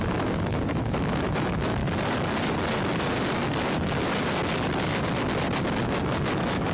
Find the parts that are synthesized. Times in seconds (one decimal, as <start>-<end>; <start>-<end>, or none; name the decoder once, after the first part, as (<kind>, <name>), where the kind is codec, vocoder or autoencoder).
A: 0.0-1.8 (autoencoder, DAC-VAE); 5.8-6.7